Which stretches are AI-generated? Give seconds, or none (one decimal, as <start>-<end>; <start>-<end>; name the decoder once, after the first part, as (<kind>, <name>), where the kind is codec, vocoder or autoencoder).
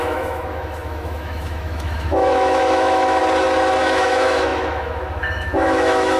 0.0-3.2 (autoencoder, DAC-VAE); 3.8-6.2